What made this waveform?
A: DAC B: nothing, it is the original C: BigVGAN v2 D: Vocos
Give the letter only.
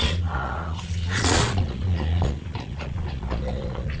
D